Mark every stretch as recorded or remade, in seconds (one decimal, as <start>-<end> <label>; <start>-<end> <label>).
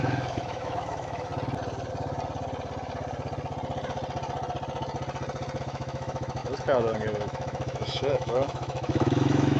0.0-1.3 remade; 1.3-5.6 recorded; 5.6-9.6 remade